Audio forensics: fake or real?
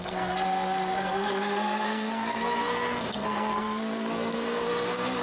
fake